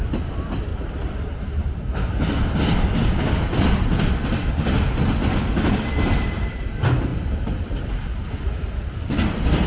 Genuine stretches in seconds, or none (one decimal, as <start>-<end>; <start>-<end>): 0.0-0.7; 2.1-9.7

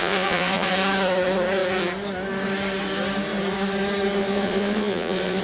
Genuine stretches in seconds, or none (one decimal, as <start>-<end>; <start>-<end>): 0.7-4.2

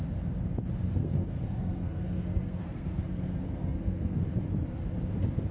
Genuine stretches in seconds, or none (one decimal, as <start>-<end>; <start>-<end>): 0.0-1.0; 4.3-5.5

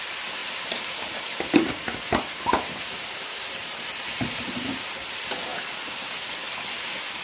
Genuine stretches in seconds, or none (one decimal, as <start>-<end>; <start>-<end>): 0.0-0.4; 4.7-7.2

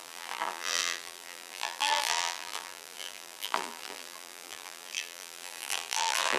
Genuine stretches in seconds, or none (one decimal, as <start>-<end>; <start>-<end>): none